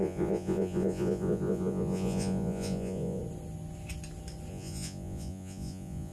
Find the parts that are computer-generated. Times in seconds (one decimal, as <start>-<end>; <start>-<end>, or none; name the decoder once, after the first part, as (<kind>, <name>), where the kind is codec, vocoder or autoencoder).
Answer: 0.0-3.2 (vocoder, Vocos); 4.5-6.1